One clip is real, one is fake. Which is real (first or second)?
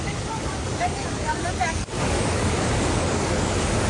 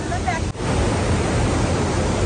second